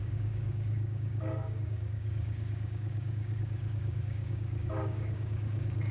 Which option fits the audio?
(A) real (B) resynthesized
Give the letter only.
B